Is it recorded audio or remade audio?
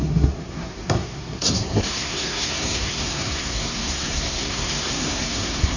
remade